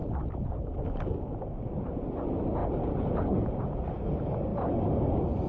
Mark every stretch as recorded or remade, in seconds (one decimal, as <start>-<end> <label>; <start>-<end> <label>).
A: 0.0-2.6 recorded; 2.6-3.7 remade; 3.7-5.5 recorded